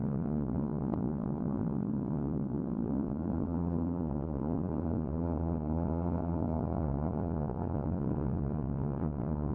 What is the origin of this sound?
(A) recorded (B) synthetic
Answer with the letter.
B